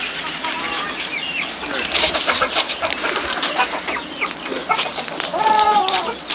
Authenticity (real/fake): real